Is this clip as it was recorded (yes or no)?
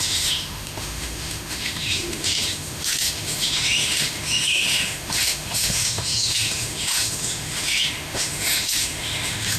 no